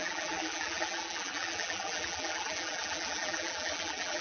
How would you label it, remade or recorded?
remade